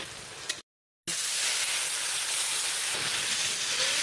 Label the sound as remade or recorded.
recorded